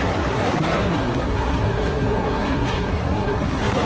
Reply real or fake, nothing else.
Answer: fake